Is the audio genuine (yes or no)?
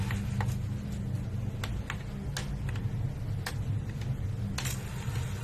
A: yes